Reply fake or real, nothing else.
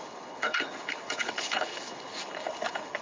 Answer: fake